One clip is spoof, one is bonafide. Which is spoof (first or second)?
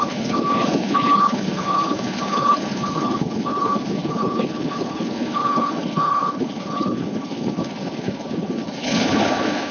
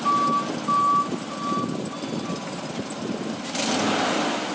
first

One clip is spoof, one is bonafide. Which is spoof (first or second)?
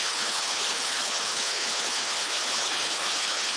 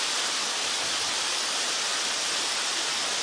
first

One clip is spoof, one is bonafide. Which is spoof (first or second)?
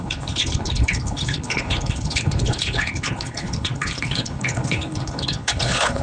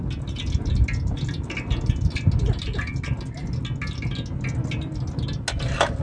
first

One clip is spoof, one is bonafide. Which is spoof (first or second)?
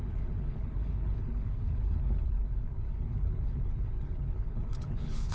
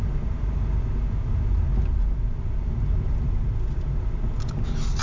first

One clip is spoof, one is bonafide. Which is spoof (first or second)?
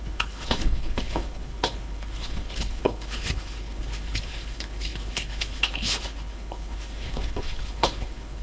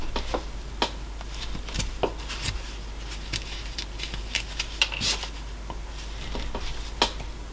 first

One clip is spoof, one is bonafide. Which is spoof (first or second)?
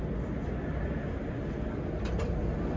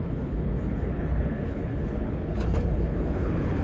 second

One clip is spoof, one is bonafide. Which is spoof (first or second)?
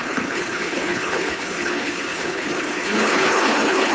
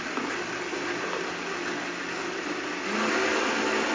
first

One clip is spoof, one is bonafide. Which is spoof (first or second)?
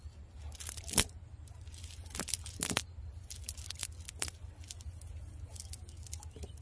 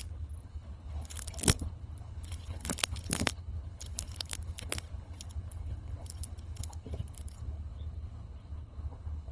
second